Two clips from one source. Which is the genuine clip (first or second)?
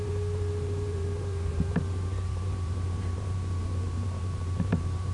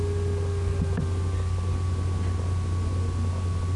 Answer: second